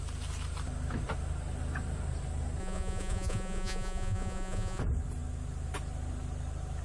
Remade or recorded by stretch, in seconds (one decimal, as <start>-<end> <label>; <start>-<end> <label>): 0.0-2.6 recorded; 2.6-4.8 remade; 4.8-6.8 recorded